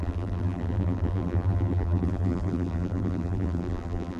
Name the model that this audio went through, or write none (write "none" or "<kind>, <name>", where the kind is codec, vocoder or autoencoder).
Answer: vocoder, BigVGAN v2